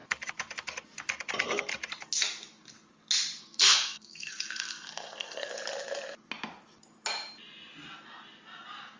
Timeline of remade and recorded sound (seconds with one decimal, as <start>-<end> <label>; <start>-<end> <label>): 0.0-3.4 recorded; 3.4-5.5 remade; 5.5-9.0 recorded

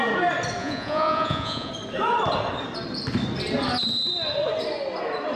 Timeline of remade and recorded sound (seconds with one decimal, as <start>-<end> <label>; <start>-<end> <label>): 0.0-0.6 recorded; 0.6-1.7 remade; 1.7-5.4 recorded